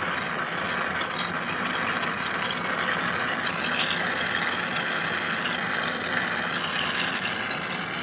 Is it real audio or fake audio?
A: real